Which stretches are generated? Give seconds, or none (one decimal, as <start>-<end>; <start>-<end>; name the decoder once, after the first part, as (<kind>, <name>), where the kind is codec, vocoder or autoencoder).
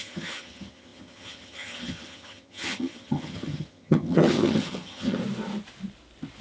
0.0-5.2 (vocoder, HiFi-GAN)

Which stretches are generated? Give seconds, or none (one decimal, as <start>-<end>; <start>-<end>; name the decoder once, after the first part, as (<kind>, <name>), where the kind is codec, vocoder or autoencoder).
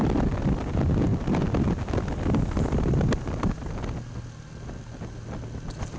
none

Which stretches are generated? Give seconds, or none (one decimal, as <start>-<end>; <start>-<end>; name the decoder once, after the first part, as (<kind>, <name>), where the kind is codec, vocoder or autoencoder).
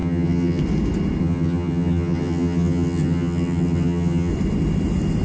0.0-0.6 (vocoder, HiFi-GAN); 1.2-4.3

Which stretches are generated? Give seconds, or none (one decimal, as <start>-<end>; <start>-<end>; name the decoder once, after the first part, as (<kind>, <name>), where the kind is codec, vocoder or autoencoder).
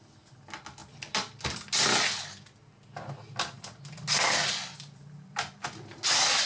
none